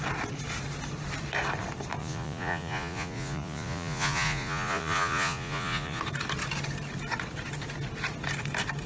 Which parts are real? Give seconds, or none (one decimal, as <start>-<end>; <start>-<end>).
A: 0.0-2.0; 6.0-8.9